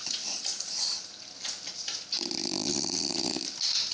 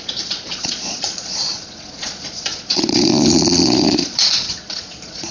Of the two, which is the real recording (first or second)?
first